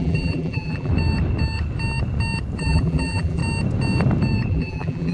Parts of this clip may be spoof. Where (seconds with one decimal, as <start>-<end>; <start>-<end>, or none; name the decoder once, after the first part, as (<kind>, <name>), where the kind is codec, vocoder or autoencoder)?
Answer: 0.0-0.9 (vocoder, BigVGAN v2); 2.6-3.4; 4.5-5.1